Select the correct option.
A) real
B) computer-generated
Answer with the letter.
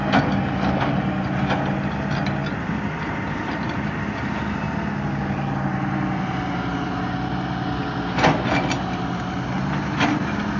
A